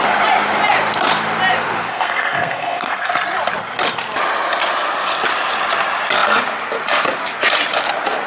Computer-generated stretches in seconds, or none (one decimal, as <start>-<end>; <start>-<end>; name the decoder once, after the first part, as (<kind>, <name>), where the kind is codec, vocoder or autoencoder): 1.9-3.1 (codec, SNAC)